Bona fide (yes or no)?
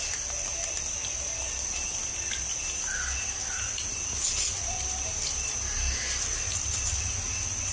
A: yes